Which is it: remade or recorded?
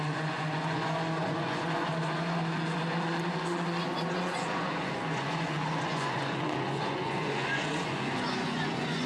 remade